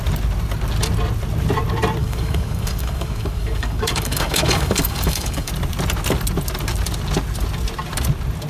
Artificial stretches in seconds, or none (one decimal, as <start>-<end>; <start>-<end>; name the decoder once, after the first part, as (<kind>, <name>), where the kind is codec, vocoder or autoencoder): 2.0-5.5 (codec, DAC)